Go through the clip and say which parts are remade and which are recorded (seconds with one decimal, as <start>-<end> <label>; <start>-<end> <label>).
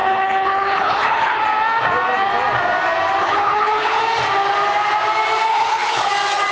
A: 0.0-1.4 remade; 1.4-3.2 recorded; 3.2-4.0 remade; 4.0-5.5 recorded; 5.5-6.1 remade; 6.1-6.5 recorded